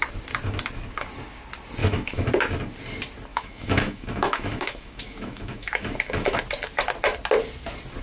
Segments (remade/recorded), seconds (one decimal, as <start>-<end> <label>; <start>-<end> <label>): 0.0-1.8 recorded; 1.8-2.3 remade; 2.3-3.3 recorded; 3.3-6.4 remade; 6.4-8.0 recorded